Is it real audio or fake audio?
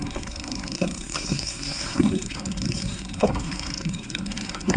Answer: fake